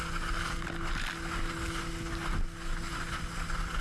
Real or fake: real